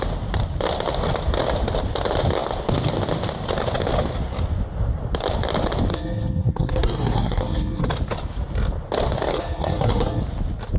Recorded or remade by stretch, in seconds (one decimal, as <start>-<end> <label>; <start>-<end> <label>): 0.0-5.9 recorded; 5.9-7.9 remade; 7.9-9.3 recorded; 9.3-10.2 remade; 10.2-10.8 recorded